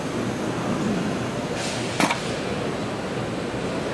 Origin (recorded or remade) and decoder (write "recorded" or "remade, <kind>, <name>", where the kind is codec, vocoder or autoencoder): recorded